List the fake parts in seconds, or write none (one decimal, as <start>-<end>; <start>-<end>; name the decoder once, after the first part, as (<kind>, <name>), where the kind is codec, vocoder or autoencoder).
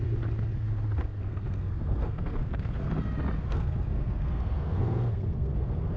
1.3-2.9 (codec, SNAC); 3.4-6.0